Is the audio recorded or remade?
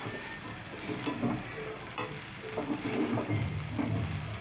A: recorded